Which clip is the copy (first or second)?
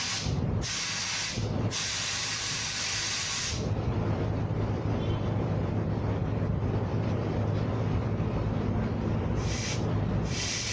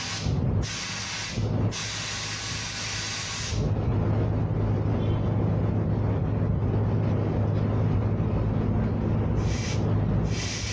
first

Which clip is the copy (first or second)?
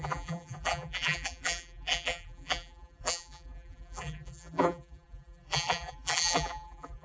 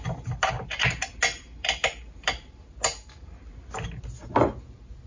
first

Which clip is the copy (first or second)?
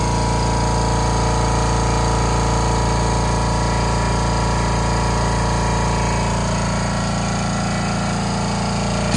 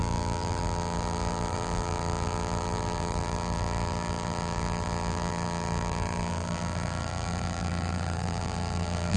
second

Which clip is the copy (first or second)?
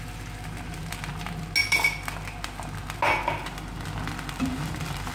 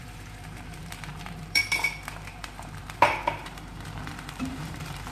second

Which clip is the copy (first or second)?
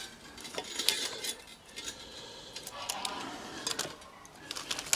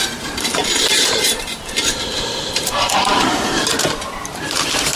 second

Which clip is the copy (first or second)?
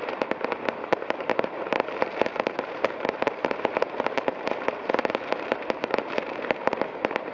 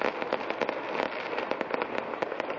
first